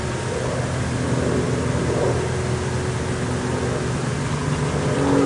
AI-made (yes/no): no